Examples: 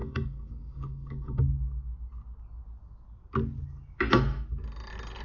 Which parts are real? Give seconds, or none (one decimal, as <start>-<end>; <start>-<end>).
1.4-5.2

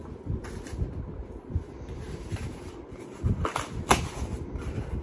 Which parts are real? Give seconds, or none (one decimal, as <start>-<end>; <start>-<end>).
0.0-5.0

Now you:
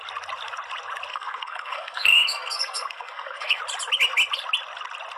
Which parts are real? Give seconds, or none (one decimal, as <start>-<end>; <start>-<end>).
0.0-1.1; 3.6-5.2

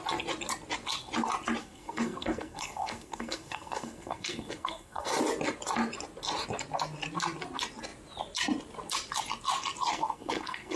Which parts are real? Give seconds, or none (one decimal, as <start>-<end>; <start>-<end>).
0.0-1.6; 5.2-9.9

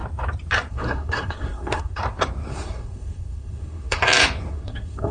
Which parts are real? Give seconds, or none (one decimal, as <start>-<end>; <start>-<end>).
0.0-0.7; 2.0-2.5; 4.0-4.5

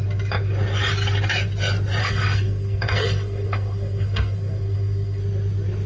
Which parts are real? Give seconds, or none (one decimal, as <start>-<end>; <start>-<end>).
0.0-2.0; 5.2-5.9